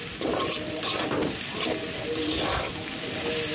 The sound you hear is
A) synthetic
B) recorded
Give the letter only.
B